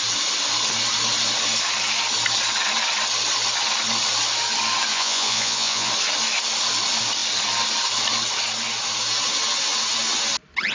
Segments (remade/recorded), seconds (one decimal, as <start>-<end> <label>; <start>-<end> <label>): 0.0-4.9 recorded; 4.9-5.9 remade; 5.9-10.7 recorded

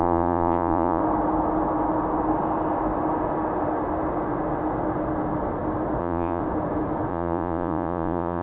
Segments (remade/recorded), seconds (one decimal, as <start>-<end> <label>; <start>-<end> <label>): 0.0-1.0 remade; 1.0-6.0 recorded; 6.0-6.4 remade; 6.4-7.1 recorded; 7.1-8.4 remade

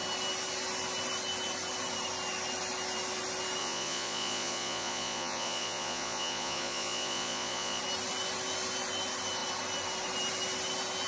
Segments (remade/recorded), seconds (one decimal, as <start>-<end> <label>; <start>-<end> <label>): 0.0-3.6 recorded; 3.6-7.8 remade; 7.8-11.1 recorded